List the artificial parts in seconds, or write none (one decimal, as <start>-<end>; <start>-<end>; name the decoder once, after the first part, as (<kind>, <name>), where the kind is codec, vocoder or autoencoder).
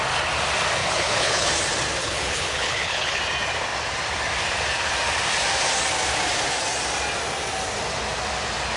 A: 0.8-1.5 (codec, HILCodec); 2.0-3.2